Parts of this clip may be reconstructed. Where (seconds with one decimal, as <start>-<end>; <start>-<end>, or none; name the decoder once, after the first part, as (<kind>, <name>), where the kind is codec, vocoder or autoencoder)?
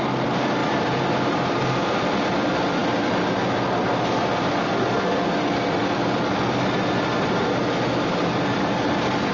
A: 0.6-1.6 (vocoder, BigVGAN v2)